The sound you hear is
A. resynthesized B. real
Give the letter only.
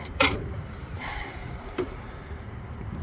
A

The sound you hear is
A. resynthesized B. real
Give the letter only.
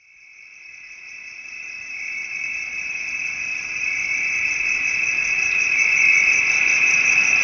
A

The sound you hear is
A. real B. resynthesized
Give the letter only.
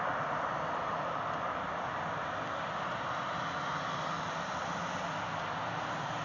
A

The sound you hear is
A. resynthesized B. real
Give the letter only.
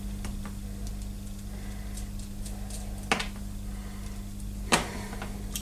B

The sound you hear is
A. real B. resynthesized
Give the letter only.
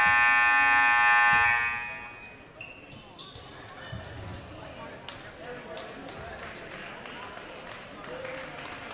A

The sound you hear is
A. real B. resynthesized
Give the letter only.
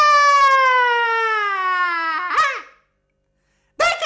A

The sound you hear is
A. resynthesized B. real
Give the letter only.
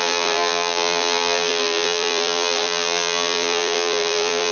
A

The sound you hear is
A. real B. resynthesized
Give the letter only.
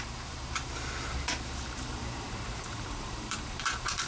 B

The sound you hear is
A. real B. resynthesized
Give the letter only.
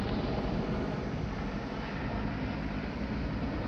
A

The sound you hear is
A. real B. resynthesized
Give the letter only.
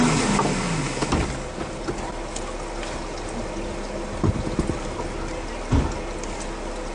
A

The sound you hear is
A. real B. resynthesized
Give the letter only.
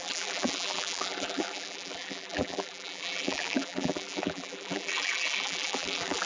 B